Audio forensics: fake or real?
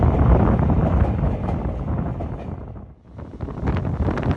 real